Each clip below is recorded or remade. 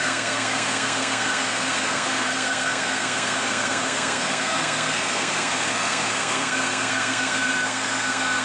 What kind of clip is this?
remade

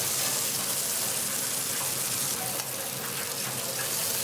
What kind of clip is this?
recorded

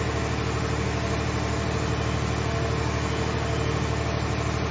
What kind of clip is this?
recorded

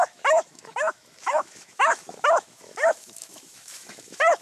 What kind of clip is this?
remade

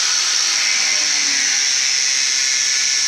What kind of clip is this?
recorded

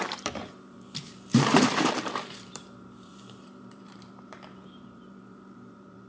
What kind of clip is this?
remade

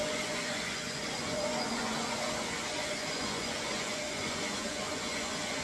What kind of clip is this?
remade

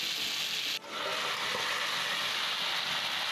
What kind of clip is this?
recorded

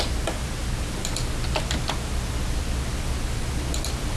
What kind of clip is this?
recorded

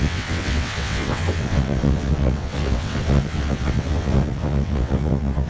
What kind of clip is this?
remade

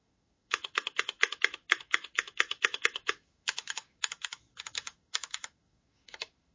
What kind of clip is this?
remade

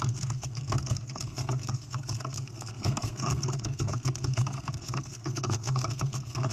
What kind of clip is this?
remade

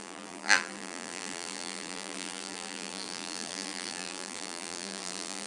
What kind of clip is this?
remade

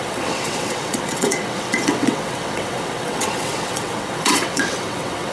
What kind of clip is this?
remade